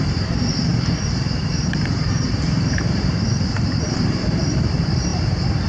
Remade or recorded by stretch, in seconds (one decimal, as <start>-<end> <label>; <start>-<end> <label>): 0.0-5.7 remade